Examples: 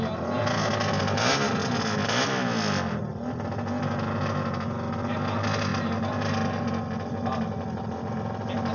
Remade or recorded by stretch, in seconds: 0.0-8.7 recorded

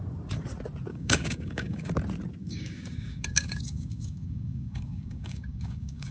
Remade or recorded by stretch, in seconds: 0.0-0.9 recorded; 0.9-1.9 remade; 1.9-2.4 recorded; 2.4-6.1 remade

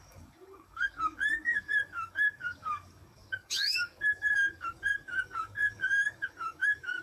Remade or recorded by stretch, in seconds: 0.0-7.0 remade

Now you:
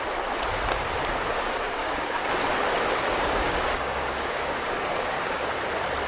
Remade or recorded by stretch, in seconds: 0.0-1.0 recorded; 1.0-2.3 remade; 2.3-3.1 recorded; 3.1-5.4 remade; 5.4-6.1 recorded